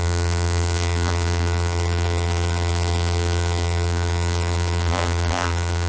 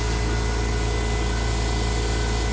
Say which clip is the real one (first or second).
second